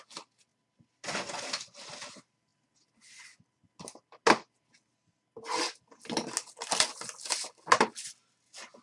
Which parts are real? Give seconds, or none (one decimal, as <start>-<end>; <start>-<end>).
0.0-8.8